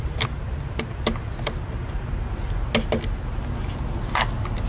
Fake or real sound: real